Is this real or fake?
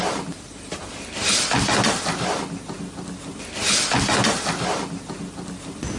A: real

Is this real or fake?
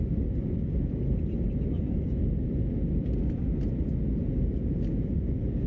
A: real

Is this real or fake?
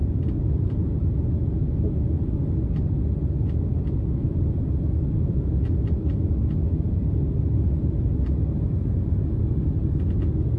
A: real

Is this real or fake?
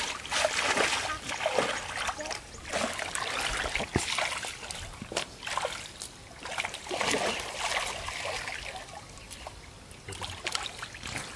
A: real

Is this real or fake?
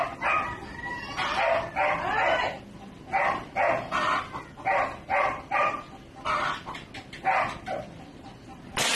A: real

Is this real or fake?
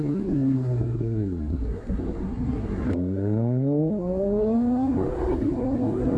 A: fake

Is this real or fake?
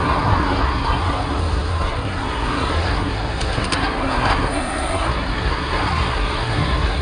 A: fake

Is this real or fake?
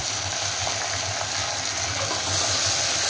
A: real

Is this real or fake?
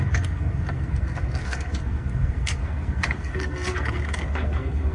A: fake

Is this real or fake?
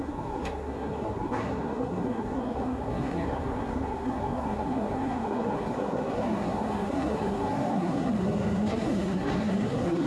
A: fake